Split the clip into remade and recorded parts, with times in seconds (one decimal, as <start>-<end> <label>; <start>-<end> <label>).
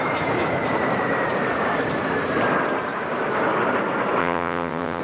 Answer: 0.0-4.2 recorded; 4.2-5.0 remade